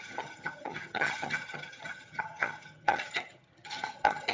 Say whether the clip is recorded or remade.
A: remade